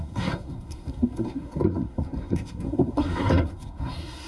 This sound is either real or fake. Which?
fake